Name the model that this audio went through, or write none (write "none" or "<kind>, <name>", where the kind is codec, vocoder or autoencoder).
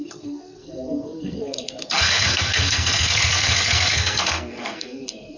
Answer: codec, SNAC